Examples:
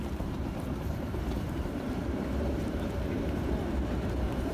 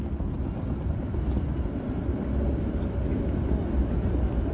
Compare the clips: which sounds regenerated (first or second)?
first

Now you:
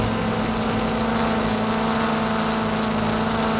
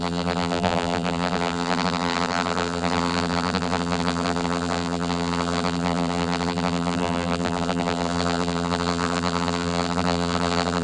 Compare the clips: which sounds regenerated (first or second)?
second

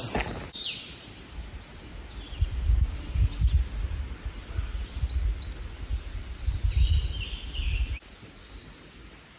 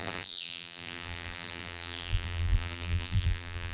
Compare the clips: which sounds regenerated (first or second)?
second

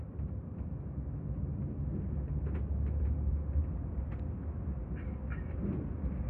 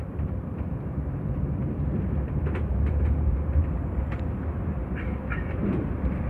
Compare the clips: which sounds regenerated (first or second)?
second